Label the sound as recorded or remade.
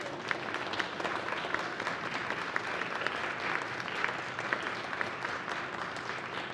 recorded